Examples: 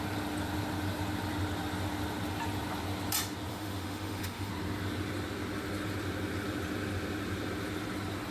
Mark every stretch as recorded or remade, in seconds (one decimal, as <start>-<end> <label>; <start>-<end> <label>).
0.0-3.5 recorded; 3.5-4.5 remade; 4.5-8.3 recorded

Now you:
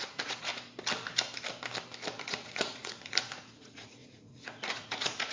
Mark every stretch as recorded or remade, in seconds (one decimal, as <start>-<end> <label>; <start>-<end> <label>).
0.0-0.5 remade; 0.5-2.2 recorded; 2.2-5.3 remade

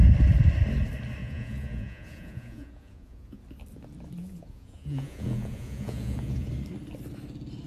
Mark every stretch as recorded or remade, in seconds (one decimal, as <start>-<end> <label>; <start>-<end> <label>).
0.0-1.2 recorded; 1.2-3.4 remade; 3.4-4.2 recorded; 4.2-6.5 remade; 6.5-7.7 recorded

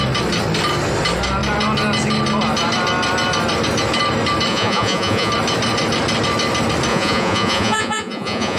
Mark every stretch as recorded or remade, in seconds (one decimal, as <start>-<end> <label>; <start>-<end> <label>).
0.0-4.5 recorded; 4.5-5.3 remade; 5.3-6.9 recorded; 6.9-8.6 remade

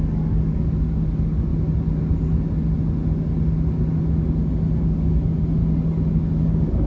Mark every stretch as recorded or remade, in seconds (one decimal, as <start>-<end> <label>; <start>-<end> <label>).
0.0-1.5 remade; 1.5-4.8 recorded; 4.8-5.6 remade; 5.6-6.4 recorded; 6.4-6.9 remade

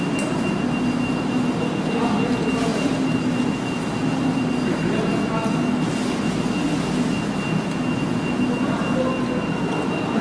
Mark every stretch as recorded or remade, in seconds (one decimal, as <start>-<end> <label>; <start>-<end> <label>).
0.0-10.2 recorded

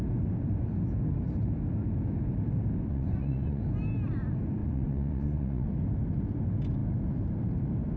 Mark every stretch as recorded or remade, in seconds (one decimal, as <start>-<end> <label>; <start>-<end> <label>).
0.0-2.9 recorded; 2.9-3.6 remade; 3.6-4.6 recorded; 4.6-5.7 remade; 5.7-8.0 recorded